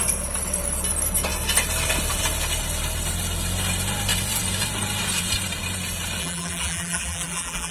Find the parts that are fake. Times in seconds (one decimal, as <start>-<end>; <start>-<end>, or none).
6.2-7.7